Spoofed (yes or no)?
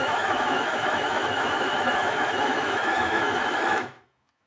yes